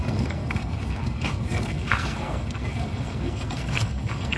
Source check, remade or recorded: remade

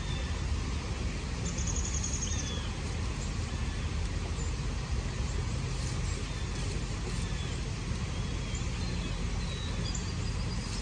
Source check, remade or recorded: recorded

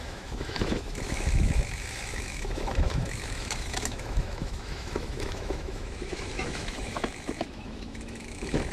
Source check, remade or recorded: remade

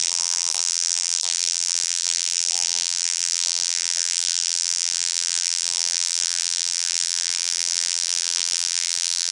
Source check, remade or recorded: remade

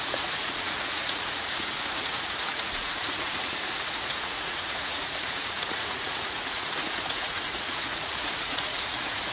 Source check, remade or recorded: remade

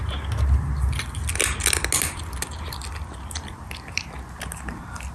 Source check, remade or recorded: recorded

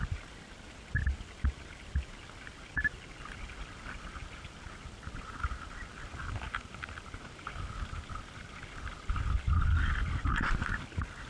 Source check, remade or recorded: recorded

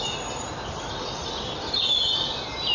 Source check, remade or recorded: recorded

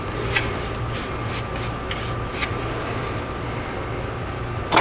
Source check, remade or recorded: recorded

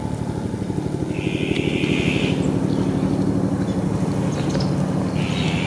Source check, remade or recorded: recorded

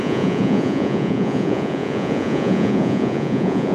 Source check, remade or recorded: remade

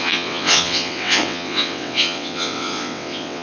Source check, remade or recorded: remade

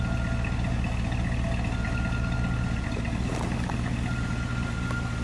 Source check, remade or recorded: recorded